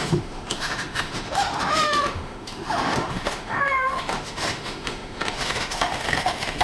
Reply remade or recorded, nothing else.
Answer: remade